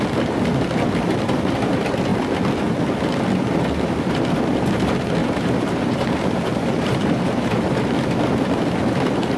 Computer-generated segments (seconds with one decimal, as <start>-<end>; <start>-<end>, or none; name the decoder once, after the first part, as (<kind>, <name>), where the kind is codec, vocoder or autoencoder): 5.2-8.0 (vocoder, BigVGAN v2)